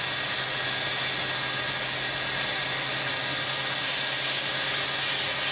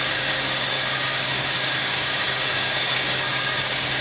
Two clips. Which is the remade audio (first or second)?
second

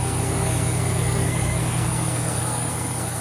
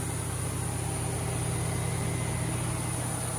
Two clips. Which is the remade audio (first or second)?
first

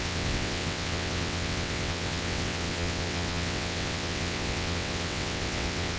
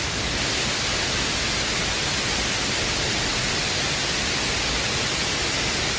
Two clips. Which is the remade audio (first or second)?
first